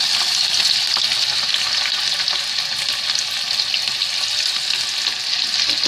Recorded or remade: recorded